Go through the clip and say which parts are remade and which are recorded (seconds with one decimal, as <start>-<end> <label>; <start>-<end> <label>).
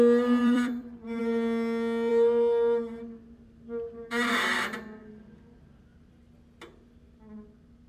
0.0-0.4 recorded; 0.4-1.2 remade; 1.2-7.9 recorded